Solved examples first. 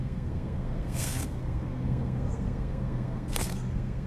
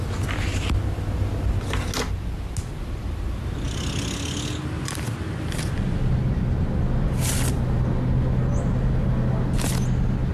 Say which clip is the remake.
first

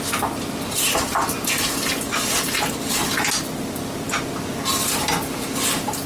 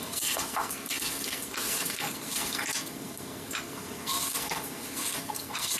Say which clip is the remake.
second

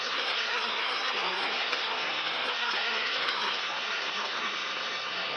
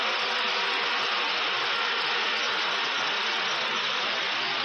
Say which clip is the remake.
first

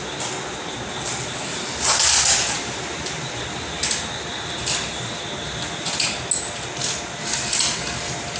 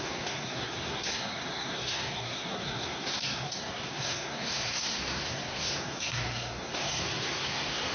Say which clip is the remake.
second